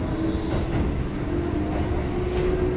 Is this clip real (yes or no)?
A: yes